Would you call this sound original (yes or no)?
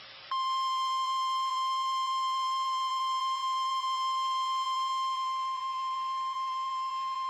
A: no